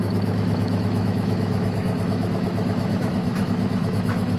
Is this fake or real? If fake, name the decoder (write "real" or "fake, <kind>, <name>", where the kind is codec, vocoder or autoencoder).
fake, autoencoder, DAC-VAE